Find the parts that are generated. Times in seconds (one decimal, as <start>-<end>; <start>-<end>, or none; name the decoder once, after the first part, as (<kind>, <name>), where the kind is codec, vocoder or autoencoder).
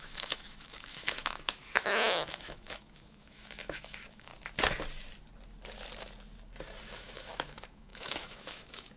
0.0-4.3 (autoencoder, DAC-VAE); 6.8-9.0